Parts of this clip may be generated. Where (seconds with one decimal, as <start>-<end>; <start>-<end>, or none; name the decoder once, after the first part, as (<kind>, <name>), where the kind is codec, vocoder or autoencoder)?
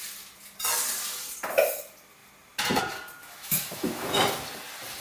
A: 3.2-4.2 (autoencoder, DAC-VAE)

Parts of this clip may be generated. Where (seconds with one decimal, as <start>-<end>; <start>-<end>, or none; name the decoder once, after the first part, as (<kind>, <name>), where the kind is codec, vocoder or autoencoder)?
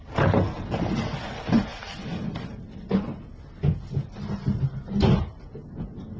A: none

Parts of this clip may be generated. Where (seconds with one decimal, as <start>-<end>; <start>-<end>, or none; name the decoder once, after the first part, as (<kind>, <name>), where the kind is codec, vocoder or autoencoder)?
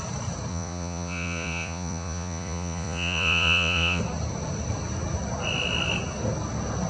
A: 0.5-4.0 (vocoder, Vocos)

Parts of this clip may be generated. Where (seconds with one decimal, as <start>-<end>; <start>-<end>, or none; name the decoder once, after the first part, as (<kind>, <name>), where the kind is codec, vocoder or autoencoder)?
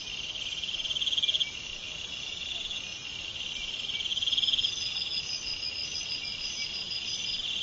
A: none